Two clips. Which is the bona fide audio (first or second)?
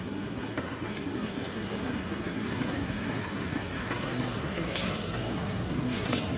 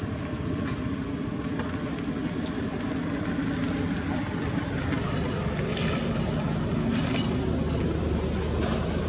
second